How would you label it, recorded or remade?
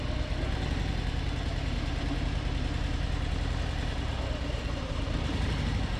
remade